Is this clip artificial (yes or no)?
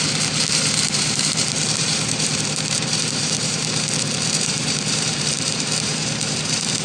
yes